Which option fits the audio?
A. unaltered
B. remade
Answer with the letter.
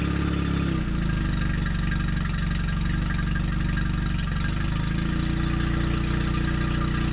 A